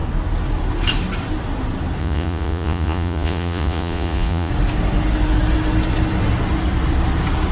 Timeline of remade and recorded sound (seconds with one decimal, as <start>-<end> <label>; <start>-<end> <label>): 0.0-2.0 recorded; 2.0-4.5 remade; 4.5-7.5 recorded